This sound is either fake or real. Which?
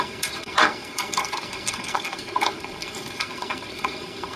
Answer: fake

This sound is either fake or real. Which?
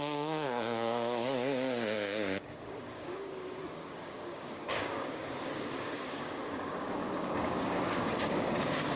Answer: fake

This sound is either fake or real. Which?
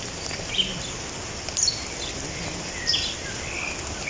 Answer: real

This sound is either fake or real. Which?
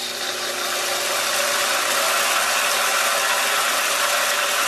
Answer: real